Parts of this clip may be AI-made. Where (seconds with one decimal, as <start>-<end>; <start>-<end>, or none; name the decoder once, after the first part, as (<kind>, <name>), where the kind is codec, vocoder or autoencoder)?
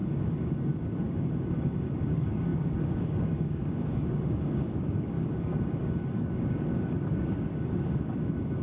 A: 0.0-8.6 (codec, DAC)